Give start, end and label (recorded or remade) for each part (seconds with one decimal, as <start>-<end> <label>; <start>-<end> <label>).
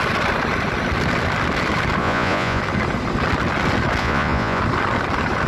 0.0-2.0 recorded; 2.0-2.6 remade; 2.6-4.0 recorded; 4.0-4.6 remade; 4.6-5.5 recorded